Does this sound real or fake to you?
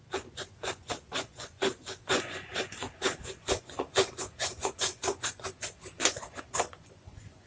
fake